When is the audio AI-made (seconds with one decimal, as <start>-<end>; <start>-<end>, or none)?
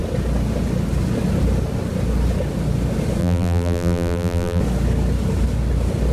3.2-4.6